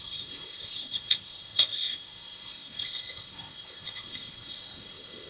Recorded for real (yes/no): no